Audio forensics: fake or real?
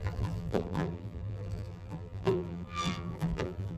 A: fake